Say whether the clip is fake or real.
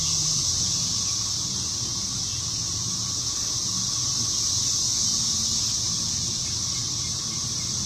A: real